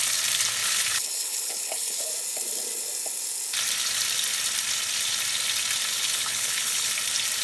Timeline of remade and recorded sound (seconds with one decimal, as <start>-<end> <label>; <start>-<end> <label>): 0.0-0.6 recorded; 0.6-2.1 remade; 2.1-5.9 recorded; 5.9-6.9 remade; 6.9-7.4 recorded